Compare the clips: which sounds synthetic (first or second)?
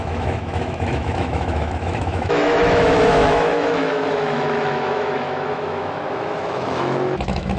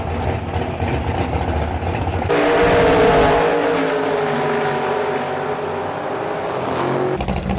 first